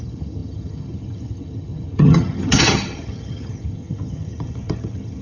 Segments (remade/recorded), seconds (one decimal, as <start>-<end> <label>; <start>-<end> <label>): 0.0-5.2 remade